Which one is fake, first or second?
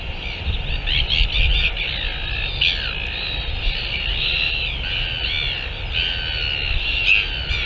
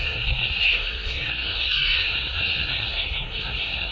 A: second